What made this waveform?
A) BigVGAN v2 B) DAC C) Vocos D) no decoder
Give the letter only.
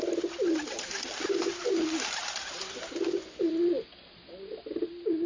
D